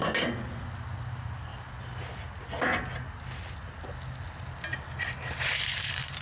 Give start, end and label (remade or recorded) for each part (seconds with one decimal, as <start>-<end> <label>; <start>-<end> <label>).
0.0-1.1 recorded; 1.1-1.5 remade; 1.5-5.2 recorded; 5.2-6.2 remade